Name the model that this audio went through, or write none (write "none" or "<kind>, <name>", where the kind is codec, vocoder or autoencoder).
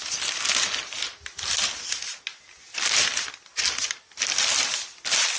none